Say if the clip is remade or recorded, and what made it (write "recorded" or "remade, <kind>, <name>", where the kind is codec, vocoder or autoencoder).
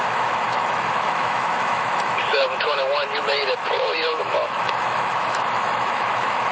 remade, autoencoder, DAC-VAE